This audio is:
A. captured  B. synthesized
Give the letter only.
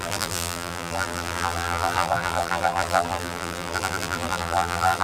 B